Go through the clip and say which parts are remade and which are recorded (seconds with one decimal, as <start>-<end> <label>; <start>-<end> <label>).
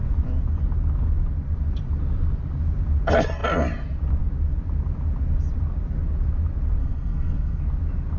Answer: 0.0-6.8 recorded; 6.8-7.6 remade; 7.6-8.2 recorded